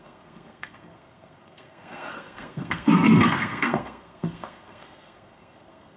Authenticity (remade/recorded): remade